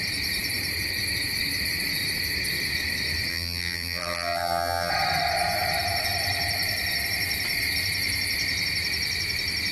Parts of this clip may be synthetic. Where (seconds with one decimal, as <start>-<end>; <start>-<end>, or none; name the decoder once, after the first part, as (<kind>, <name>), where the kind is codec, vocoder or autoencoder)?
3.3-4.9 (vocoder, BigVGAN v2)